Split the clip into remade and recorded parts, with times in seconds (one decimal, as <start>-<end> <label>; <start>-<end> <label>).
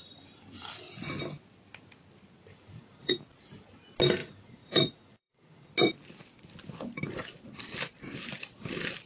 0.0-2.5 recorded; 2.5-3.1 remade; 3.1-4.2 recorded; 4.2-5.7 remade; 5.7-9.1 recorded